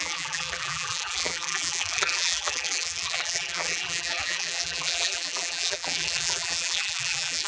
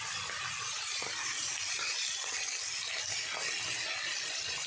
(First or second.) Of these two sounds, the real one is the second